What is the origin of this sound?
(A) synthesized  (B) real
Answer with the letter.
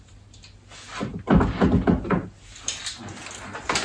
B